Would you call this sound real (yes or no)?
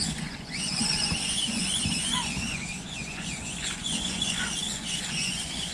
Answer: no